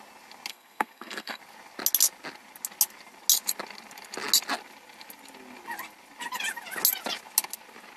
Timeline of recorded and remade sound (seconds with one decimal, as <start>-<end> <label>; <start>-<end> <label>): 0.0-0.5 recorded; 0.5-1.4 remade; 1.4-8.0 recorded